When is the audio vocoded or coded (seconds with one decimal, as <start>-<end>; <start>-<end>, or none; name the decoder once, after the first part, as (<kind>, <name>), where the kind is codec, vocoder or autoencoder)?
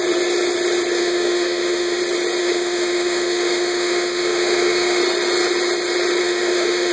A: 1.0-2.0 (autoencoder, DAC-VAE); 2.4-5.0; 6.2-6.9